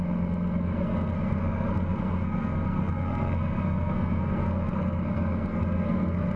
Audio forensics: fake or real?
fake